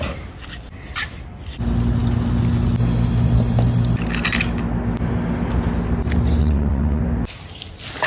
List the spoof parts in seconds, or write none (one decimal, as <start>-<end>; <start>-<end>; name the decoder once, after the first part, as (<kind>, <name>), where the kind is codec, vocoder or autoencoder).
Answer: 6.4-7.0 (vocoder, WaveNeXt)